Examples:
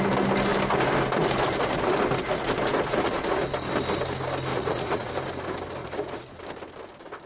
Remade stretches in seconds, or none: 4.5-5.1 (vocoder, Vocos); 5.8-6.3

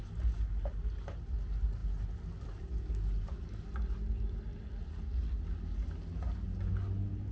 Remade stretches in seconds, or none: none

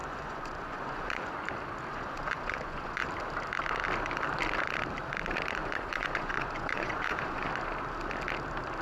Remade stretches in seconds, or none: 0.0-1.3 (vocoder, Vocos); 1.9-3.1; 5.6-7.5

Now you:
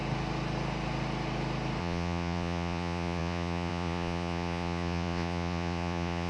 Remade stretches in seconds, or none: 1.8-6.3 (vocoder, Vocos)